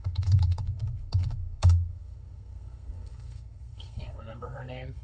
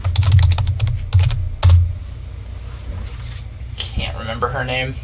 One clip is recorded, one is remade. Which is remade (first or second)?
first